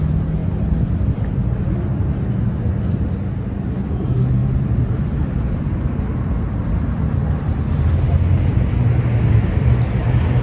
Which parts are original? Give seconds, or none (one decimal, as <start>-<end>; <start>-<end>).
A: 0.0-10.4